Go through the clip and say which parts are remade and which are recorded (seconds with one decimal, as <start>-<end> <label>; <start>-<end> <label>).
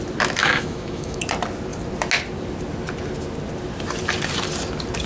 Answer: 0.0-0.4 recorded; 0.4-1.2 remade; 1.2-5.1 recorded